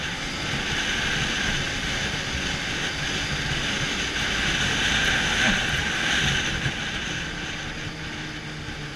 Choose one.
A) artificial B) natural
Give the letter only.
B